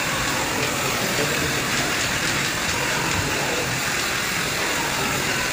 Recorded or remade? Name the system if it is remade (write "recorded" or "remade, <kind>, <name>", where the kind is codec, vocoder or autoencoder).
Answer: remade, vocoder, BigVGAN v2